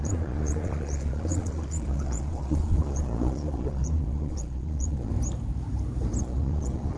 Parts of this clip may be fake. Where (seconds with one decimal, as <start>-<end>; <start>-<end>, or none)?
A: 0.0-5.1; 6.2-7.0